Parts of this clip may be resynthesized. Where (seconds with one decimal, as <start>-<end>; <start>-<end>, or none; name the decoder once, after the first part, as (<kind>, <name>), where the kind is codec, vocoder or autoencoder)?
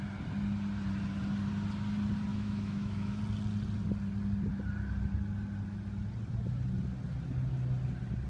2.3-3.2 (autoencoder, DAC-VAE)